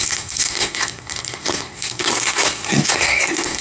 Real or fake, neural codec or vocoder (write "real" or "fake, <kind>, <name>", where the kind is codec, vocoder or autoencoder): fake, codec, SNAC